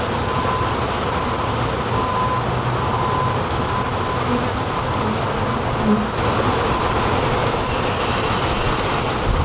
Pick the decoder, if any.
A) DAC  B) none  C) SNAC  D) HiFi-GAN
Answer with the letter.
B